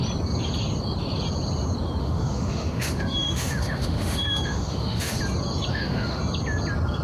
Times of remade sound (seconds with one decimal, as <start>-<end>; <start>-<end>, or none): 2.0-5.2; 5.7-6.2